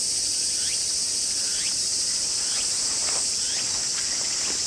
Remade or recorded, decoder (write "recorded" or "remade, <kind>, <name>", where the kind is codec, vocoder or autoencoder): recorded